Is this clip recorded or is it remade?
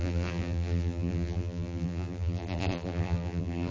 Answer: remade